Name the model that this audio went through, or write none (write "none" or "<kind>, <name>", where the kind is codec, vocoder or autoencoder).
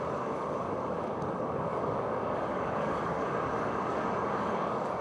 codec, DAC